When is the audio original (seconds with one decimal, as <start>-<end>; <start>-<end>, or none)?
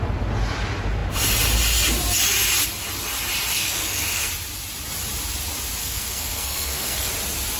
0.0-3.5; 4.3-5.8; 7.1-7.6